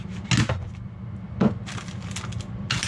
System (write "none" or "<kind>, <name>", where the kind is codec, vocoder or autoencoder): none